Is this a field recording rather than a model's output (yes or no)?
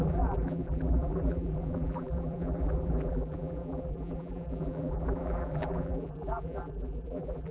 no